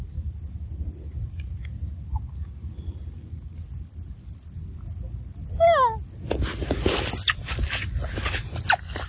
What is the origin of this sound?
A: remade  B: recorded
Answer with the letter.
B